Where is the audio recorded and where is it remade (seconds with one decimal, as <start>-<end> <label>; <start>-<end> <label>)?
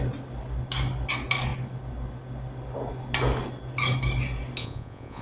0.0-4.6 recorded; 4.6-5.2 remade